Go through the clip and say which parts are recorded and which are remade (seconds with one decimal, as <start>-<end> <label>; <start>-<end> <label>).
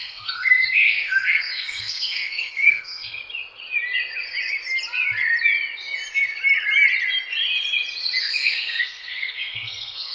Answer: 0.0-3.2 remade; 3.2-8.2 recorded; 8.2-10.1 remade